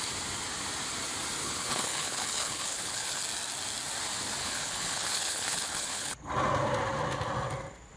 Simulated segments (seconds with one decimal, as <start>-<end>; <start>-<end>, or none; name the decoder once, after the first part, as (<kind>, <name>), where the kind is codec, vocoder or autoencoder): 1.4-3.2 (codec, HILCodec); 4.4-6.3